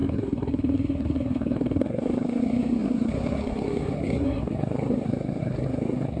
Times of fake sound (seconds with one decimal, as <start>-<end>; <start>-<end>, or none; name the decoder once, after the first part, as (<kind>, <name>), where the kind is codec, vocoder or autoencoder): 0.0-6.2 (codec, SNAC)